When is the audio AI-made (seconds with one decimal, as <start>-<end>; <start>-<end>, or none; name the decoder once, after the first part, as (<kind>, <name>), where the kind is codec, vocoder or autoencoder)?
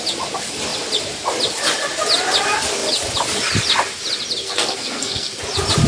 4.4-5.4 (codec, SNAC)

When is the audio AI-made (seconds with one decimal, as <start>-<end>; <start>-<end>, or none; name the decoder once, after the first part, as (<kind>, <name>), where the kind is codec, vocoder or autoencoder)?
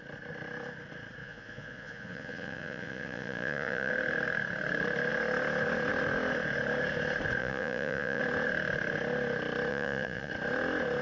1.2-3.9 (vocoder, Vocos); 7.4-8.2; 9.7-10.3